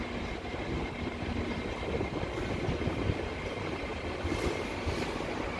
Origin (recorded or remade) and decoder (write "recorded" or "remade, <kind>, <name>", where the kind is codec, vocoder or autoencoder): remade, vocoder, BigVGAN v2